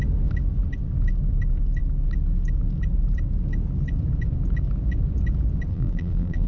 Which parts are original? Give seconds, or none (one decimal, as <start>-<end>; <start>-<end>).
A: 0.0-5.7

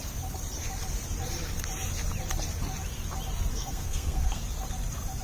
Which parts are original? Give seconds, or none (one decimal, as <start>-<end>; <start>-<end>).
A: 0.0-3.5; 4.4-5.2

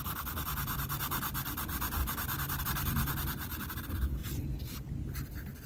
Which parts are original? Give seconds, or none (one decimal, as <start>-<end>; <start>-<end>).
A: 2.0-2.6

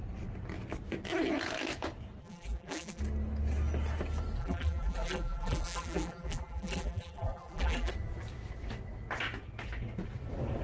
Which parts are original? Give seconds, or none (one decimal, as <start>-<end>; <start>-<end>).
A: 0.0-2.2; 3.0-4.4; 7.9-10.6

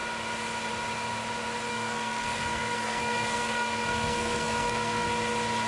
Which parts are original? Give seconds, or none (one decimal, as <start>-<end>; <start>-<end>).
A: 0.0-1.7; 5.1-5.7